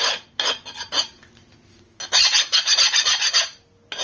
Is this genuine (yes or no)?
yes